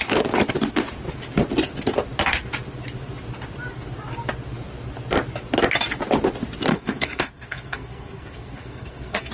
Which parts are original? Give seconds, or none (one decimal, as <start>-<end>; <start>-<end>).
0.0-6.7